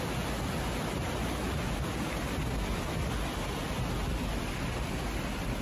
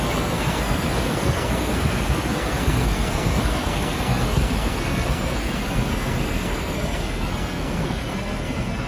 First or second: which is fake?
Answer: second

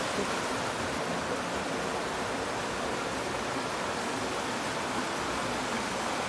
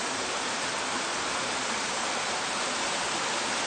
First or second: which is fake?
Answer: second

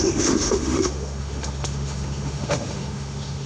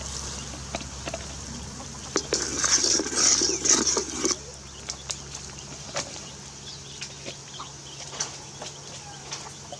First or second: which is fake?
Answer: first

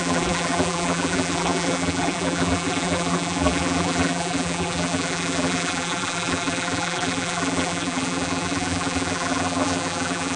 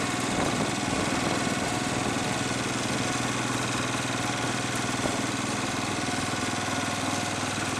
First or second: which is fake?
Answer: first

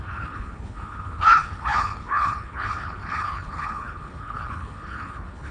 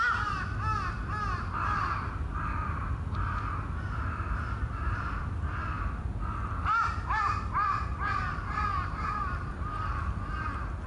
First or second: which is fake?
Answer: first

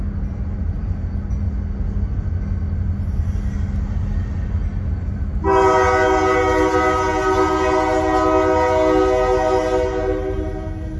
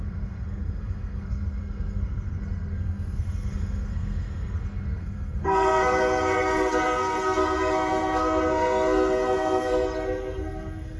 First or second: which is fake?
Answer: second